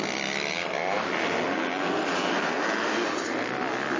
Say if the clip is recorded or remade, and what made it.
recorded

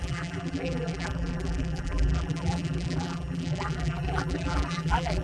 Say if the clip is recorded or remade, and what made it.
remade, vocoder, BigVGAN v2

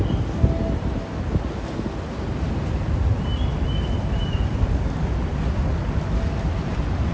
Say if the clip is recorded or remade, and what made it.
recorded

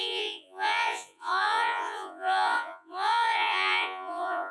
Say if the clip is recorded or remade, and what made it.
remade, vocoder, Vocos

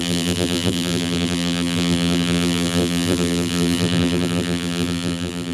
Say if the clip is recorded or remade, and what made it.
remade, vocoder, BigVGAN v2